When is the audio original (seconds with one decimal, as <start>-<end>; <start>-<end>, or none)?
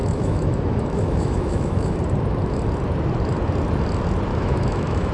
2.0-4.3